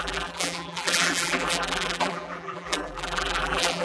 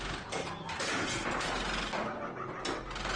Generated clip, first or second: first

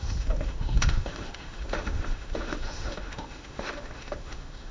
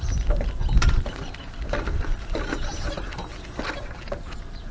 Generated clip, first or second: first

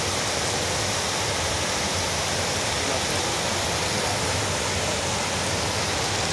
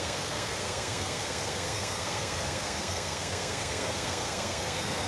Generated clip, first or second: second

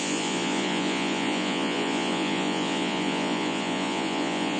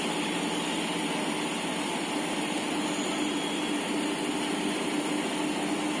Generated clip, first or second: first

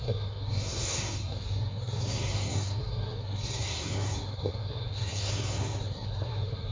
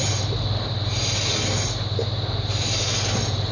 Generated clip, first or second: first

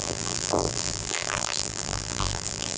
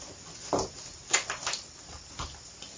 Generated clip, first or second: first